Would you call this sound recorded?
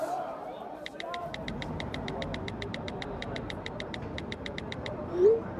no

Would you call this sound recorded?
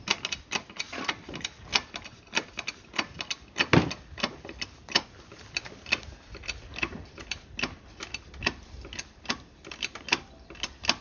yes